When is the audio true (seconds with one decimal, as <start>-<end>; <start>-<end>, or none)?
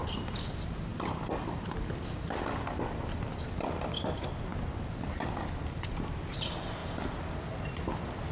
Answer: 0.0-8.3